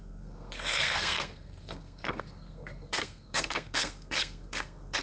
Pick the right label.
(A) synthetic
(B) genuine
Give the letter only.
A